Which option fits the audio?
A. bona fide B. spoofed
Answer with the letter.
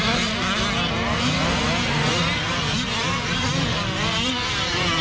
A